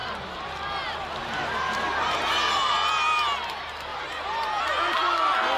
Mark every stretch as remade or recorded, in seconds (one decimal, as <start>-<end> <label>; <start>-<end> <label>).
0.0-0.5 remade; 0.5-1.2 recorded; 1.2-2.2 remade; 2.2-3.9 recorded; 3.9-4.6 remade; 4.6-5.6 recorded